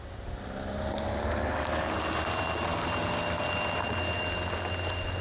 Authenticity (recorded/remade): recorded